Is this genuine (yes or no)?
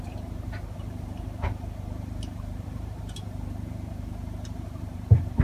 no